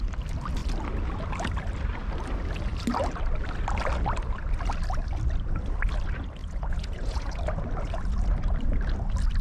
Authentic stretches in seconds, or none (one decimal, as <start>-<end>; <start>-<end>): 0.0-6.4; 7.4-9.4